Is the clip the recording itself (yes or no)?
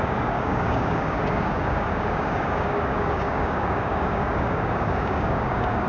no